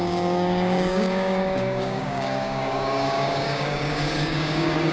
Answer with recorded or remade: remade